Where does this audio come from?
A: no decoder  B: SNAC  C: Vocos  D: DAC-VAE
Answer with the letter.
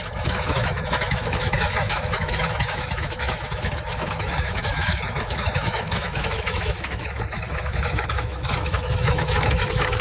D